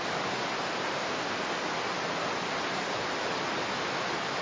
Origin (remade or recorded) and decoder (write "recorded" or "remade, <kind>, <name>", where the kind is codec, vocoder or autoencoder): recorded